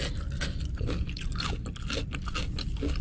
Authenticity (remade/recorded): recorded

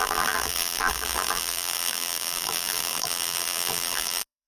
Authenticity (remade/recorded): remade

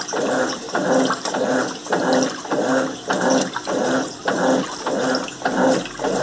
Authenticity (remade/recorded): recorded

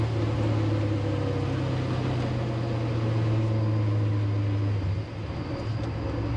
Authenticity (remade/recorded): recorded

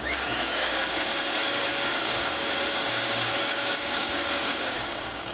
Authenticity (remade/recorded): remade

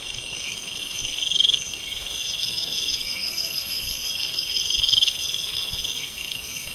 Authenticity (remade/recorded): remade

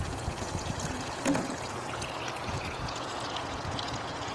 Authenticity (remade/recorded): remade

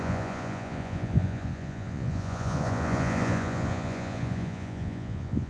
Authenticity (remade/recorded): remade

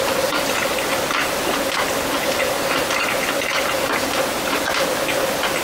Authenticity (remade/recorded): recorded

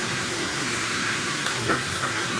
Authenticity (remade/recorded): remade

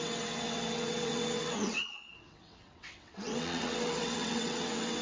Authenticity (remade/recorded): remade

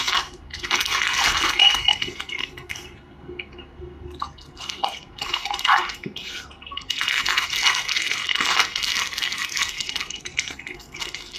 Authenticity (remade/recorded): remade